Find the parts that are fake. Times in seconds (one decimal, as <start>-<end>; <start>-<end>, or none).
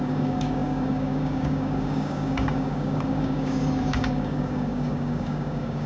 0.0-5.9